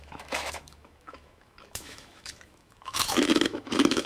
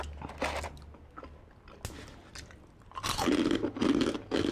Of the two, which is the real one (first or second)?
second